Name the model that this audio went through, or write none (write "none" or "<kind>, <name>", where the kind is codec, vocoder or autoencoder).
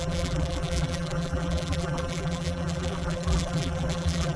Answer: vocoder, BigVGAN v2